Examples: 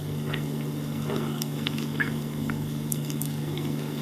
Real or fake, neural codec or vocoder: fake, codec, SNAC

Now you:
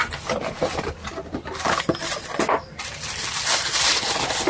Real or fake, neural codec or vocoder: real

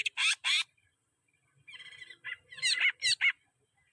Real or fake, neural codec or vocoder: real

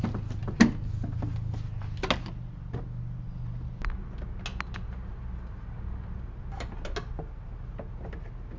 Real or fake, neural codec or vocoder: real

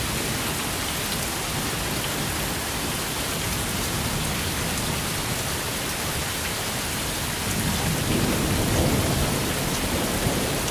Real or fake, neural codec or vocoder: real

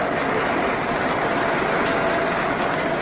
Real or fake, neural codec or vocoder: real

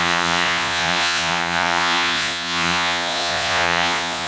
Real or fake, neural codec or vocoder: fake, vocoder, Vocos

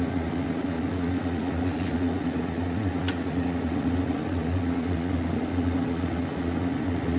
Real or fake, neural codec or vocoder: fake, vocoder, Vocos